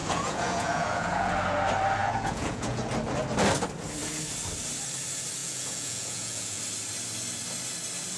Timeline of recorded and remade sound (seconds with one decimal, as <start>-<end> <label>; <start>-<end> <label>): 0.0-1.3 remade; 1.3-2.0 recorded; 2.0-2.8 remade; 2.8-5.4 recorded; 5.4-6.6 remade; 6.6-8.2 recorded